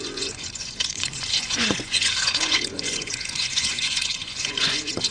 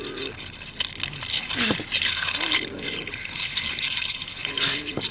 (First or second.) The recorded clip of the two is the second